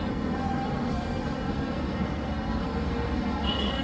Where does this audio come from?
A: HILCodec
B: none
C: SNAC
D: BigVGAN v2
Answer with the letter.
C